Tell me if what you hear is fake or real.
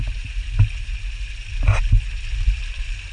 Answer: real